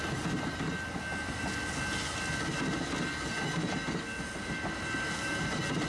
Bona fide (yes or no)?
yes